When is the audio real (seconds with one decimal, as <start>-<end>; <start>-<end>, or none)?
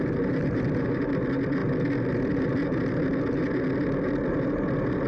0.0-5.1